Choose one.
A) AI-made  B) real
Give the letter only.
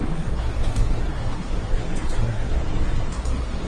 A